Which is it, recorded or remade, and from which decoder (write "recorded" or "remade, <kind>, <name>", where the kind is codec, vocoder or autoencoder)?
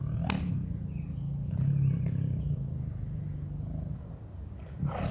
recorded